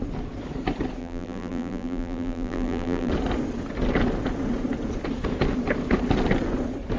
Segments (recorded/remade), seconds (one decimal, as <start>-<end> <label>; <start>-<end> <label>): 0.0-1.0 recorded; 1.0-3.1 remade; 3.1-7.0 recorded